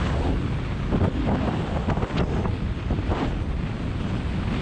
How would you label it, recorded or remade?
recorded